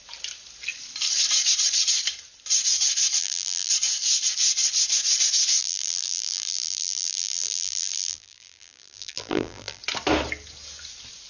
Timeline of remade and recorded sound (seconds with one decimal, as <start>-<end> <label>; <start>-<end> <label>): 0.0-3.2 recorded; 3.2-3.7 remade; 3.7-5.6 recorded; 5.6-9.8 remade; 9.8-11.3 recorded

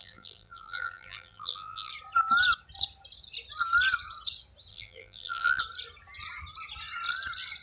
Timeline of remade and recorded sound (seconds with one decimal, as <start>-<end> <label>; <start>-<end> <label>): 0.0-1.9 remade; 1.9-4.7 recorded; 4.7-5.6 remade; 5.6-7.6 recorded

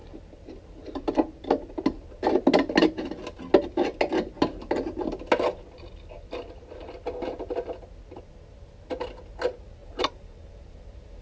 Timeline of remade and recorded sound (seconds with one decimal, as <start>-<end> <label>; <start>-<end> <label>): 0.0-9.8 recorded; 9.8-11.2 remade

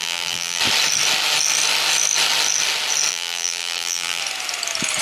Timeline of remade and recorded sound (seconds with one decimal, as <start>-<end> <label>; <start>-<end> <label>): 0.0-0.6 remade; 0.6-3.1 recorded; 3.1-4.2 remade; 4.2-5.0 recorded

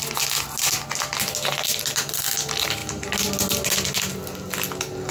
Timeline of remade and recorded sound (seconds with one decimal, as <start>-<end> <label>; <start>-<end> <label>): 0.0-1.6 recorded; 1.6-2.1 remade; 2.1-5.1 recorded

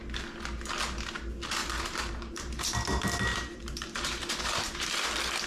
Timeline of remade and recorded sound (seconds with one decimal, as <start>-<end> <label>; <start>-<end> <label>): 0.0-1.6 recorded; 1.6-2.6 remade; 2.6-3.3 recorded; 3.3-4.9 remade; 4.9-5.5 recorded

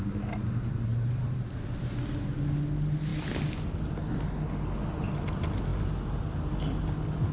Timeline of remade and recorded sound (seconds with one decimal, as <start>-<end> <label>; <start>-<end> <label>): 0.0-0.9 recorded; 0.9-1.5 remade; 1.5-7.3 recorded